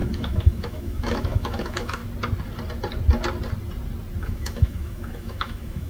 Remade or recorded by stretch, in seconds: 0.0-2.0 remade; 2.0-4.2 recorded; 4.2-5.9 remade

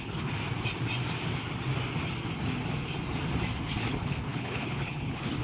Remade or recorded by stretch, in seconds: 0.0-0.4 remade; 0.4-3.6 recorded; 3.6-5.4 remade

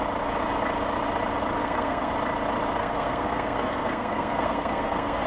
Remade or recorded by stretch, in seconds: 0.0-1.6 recorded; 1.6-2.1 remade; 2.1-2.8 recorded; 2.8-5.3 remade

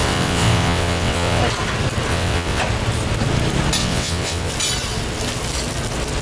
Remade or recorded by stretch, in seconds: 0.0-1.4 remade; 1.4-2.1 recorded; 2.1-2.6 remade; 2.6-3.8 recorded; 3.8-4.5 remade; 4.5-6.2 recorded

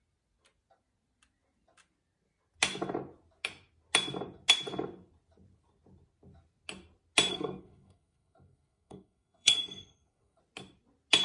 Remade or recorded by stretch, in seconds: 0.0-7.3 recorded; 7.3-10.4 remade; 10.4-11.2 recorded

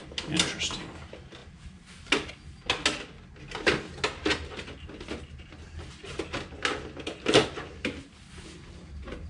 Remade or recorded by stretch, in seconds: 0.0-9.3 recorded